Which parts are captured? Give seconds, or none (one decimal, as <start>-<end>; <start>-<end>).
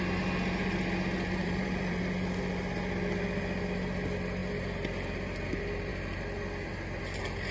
0.0-1.4; 2.0-7.5